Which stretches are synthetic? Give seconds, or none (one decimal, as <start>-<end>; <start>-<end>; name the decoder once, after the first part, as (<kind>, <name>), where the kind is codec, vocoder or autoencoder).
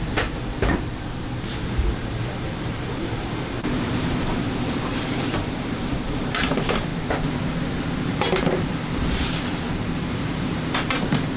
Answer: 0.0-6.9 (vocoder, BigVGAN v2); 8.4-11.4